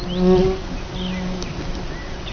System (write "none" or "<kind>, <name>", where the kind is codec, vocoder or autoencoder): none